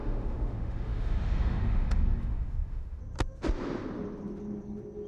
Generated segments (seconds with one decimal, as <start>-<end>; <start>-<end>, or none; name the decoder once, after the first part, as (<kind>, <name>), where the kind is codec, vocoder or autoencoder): 0.0-3.0 (autoencoder, DAC-VAE)